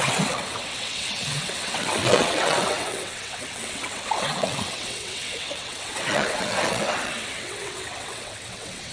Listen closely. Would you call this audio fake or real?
fake